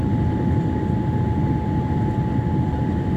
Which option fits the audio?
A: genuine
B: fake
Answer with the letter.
A